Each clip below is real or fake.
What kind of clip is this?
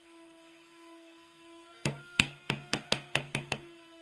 fake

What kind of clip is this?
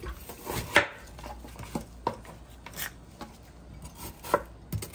real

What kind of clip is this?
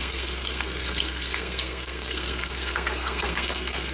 fake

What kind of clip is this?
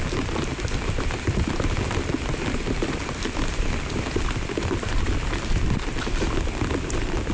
real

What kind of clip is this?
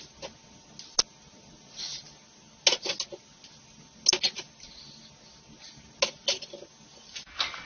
real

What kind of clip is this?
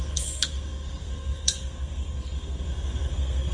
fake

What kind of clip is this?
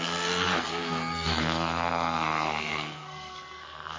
fake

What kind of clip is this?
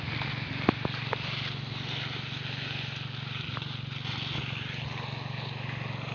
real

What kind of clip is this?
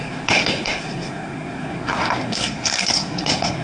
fake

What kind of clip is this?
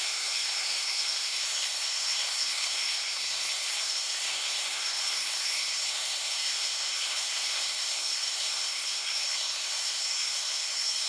fake